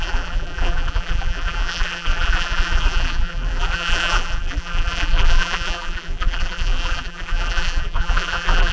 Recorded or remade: remade